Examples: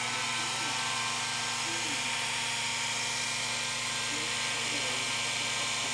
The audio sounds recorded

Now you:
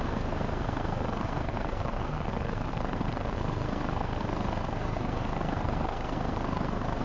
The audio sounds remade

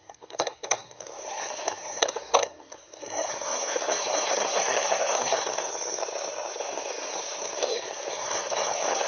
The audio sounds remade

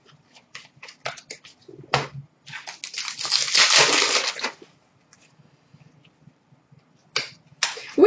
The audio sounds recorded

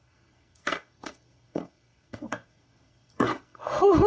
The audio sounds remade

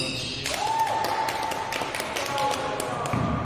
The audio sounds recorded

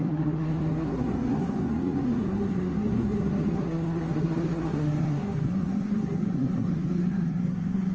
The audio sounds remade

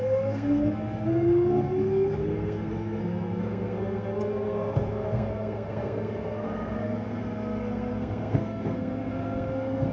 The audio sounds remade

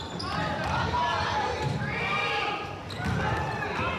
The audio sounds recorded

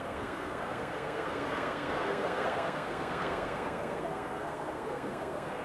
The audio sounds remade